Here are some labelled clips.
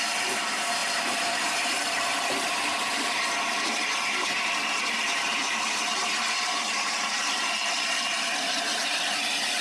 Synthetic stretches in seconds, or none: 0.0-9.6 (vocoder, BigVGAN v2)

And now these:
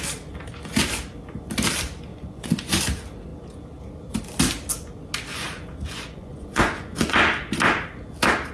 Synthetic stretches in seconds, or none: 2.1-2.8 (vocoder, Vocos); 5.3-7.6